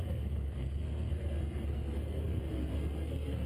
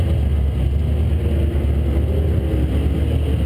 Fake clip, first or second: first